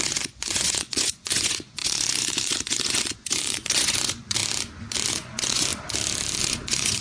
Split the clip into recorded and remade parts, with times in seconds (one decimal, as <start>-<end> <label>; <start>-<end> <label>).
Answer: 0.0-4.4 remade; 4.4-5.1 recorded; 5.1-5.7 remade; 5.7-6.4 recorded; 6.4-7.0 remade